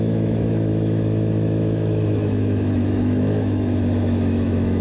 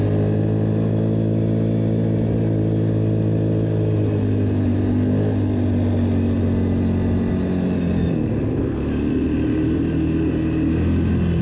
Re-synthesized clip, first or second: first